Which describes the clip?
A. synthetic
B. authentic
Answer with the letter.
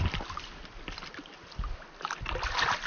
B